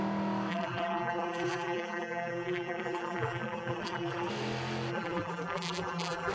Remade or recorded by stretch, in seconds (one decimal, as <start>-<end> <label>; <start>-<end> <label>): 0.0-0.5 recorded; 0.5-4.3 remade; 4.3-4.9 recorded; 4.9-6.3 remade